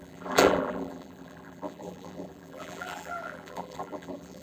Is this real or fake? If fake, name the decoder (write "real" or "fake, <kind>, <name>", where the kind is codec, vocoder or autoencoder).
fake, vocoder, BigVGAN v2